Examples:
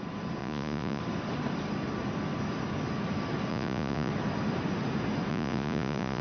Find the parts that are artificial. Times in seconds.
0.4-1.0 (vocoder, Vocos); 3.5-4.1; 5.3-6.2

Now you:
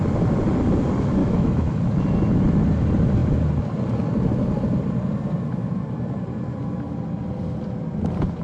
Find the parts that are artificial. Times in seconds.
1.2-1.8 (autoencoder, DAC-VAE)